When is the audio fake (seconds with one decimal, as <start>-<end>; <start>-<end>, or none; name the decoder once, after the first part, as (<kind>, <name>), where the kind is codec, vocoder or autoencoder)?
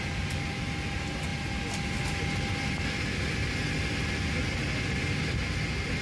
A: none